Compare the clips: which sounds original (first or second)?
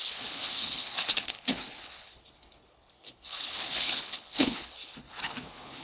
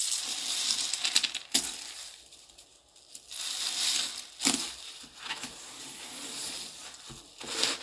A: second